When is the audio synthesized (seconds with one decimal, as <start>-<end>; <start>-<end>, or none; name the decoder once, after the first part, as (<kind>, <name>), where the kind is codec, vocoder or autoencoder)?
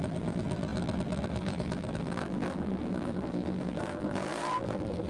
0.0-5.1 (vocoder, BigVGAN v2)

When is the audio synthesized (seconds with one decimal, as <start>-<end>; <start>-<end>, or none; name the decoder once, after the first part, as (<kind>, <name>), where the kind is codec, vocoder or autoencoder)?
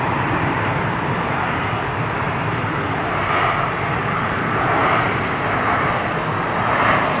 0.0-4.8 (vocoder, BigVGAN v2); 5.7-7.2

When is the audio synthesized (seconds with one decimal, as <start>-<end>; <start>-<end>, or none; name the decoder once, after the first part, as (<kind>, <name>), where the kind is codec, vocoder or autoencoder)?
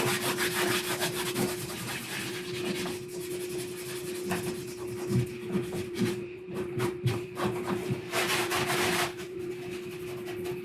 5.6-9.5 (vocoder, BigVGAN v2)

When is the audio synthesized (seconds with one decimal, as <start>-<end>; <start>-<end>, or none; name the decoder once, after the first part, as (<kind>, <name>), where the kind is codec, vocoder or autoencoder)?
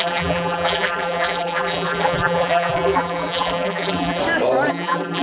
0.0-4.2 (vocoder, BigVGAN v2); 4.7-5.2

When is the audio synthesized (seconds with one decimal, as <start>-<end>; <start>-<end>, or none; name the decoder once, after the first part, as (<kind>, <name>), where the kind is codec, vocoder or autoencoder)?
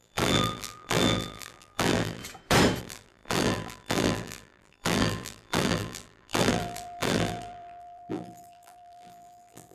0.0-2.2 (vocoder, BigVGAN v2); 2.8-9.7